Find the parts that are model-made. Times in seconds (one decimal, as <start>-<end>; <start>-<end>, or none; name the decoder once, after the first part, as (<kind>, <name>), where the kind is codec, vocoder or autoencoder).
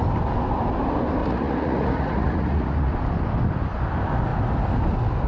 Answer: 1.2-2.9 (vocoder, Vocos)